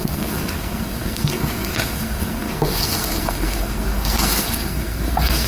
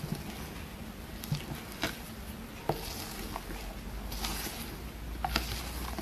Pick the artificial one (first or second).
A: first